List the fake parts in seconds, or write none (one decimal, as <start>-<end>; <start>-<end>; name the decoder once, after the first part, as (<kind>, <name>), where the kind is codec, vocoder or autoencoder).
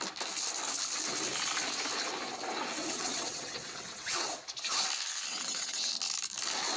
2.8-4.3 (vocoder, WaveNeXt); 5.3-5.9